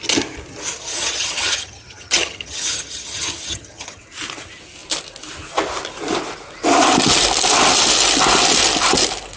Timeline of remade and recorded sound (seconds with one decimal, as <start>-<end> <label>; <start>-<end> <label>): 0.0-0.9 recorded; 0.9-4.0 remade; 4.0-9.4 recorded